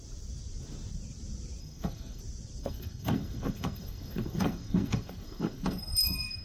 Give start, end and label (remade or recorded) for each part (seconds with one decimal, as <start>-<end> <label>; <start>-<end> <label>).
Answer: 0.0-1.6 recorded; 1.6-2.2 remade; 2.2-2.6 recorded; 2.6-6.4 remade